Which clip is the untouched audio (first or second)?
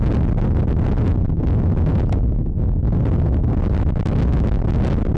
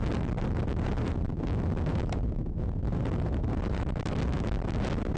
first